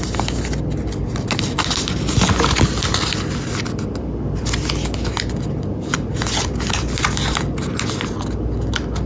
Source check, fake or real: real